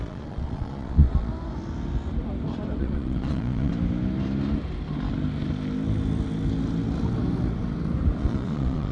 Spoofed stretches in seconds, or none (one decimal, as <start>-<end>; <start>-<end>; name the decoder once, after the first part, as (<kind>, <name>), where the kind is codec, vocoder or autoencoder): 0.0-1.3 (vocoder, Vocos); 2.8-3.7; 8.2-8.9